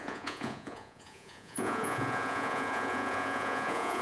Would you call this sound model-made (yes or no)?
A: yes